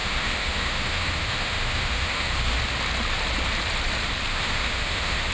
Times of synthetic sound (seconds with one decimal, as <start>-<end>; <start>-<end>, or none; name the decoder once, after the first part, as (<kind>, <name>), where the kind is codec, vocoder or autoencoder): 0.0-2.6 (autoencoder, DAC-VAE); 4.3-5.3